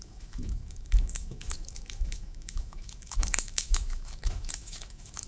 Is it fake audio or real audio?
fake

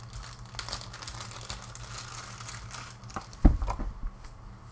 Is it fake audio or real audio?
real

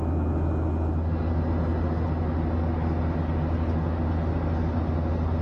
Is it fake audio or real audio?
real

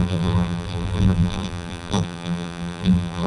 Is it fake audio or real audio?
fake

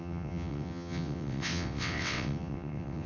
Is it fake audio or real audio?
fake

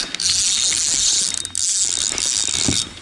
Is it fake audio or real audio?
real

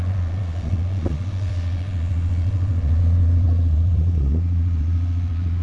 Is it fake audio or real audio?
fake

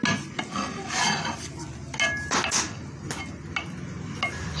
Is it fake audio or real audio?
real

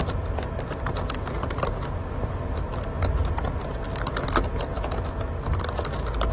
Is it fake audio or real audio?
real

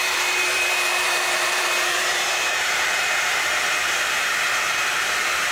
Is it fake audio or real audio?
fake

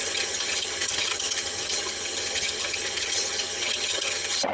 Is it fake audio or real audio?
fake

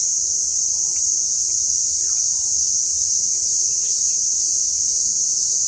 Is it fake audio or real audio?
real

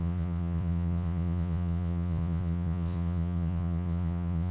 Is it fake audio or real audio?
fake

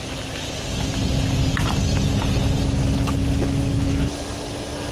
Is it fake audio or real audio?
real